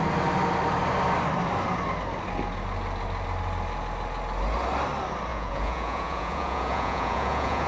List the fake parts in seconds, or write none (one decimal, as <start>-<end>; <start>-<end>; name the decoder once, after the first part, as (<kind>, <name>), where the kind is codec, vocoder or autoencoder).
5.3-7.7 (vocoder, Vocos)